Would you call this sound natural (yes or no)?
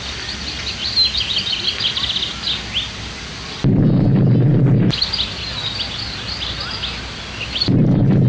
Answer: yes